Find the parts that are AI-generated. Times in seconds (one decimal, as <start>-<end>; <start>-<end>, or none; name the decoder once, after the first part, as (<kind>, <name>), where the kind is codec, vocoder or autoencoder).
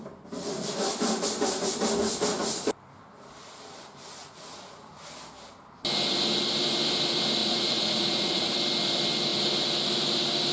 4.2-4.9 (vocoder, Vocos); 7.4-8.6